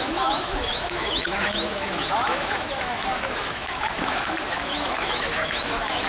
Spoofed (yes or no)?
yes